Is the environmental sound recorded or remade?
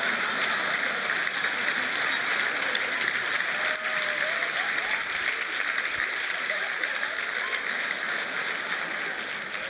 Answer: recorded